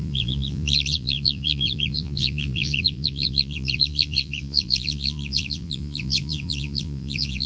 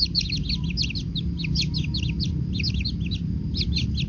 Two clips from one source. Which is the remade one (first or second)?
first